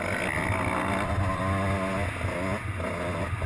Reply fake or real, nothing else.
real